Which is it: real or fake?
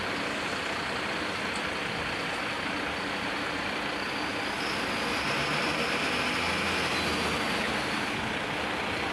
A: real